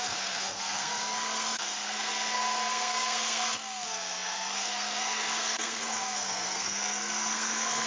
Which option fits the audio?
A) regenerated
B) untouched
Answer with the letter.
A